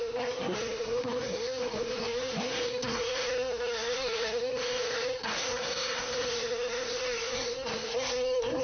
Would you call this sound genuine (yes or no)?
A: no